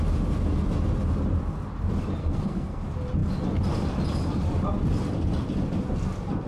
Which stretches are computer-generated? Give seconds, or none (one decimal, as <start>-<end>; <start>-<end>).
2.2-2.8